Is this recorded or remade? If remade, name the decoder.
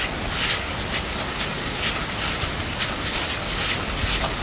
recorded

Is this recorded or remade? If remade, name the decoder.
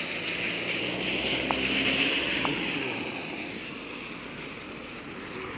recorded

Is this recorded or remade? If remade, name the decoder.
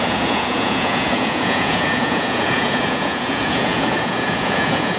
remade, vocoder, Vocos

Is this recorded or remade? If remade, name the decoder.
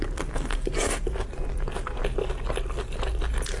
recorded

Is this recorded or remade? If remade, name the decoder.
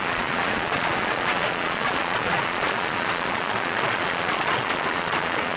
remade, vocoder, Vocos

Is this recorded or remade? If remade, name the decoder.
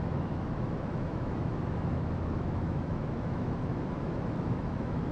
remade, autoencoder, DAC-VAE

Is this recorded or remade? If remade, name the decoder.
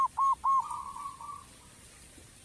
recorded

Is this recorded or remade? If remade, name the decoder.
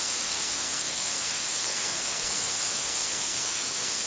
remade, codec, SNAC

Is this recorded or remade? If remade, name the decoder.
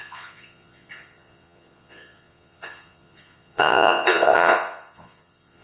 remade, vocoder, Vocos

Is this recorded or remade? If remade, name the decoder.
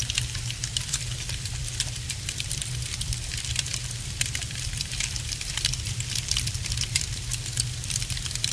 remade, vocoder, BigVGAN v2